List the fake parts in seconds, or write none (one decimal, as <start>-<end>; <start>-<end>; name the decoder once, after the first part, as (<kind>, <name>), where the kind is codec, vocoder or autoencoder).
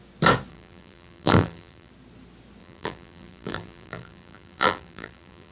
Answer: 0.5-1.9 (vocoder, BigVGAN v2); 2.6-5.5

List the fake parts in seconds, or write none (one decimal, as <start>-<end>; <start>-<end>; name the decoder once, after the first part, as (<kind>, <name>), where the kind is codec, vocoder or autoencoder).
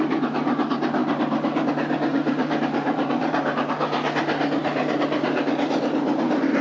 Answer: 2.1-3.7 (vocoder, BigVGAN v2); 4.6-5.4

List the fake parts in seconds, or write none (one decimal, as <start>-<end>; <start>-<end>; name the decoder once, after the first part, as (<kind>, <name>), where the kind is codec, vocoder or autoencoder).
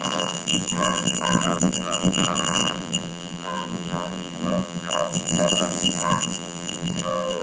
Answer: 0.0-7.4 (vocoder, BigVGAN v2)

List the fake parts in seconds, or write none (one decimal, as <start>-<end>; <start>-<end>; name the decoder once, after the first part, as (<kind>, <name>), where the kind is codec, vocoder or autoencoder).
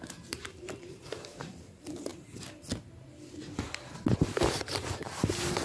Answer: 0.0-2.1 (vocoder, BigVGAN v2); 4.2-5.6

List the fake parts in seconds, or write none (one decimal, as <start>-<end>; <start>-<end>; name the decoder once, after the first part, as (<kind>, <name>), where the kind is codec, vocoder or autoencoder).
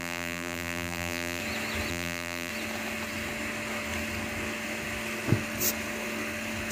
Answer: 0.0-1.4 (vocoder, BigVGAN v2); 1.9-2.5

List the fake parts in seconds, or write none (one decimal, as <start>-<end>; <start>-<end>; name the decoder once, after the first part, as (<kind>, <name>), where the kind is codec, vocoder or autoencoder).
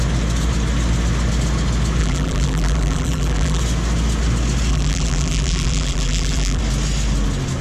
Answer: 2.0-3.6 (vocoder, BigVGAN v2); 4.7-6.6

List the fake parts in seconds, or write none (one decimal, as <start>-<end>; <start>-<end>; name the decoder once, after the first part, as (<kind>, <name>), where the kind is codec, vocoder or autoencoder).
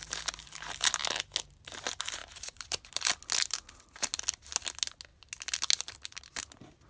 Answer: 2.2-3.2 (vocoder, BigVGAN v2)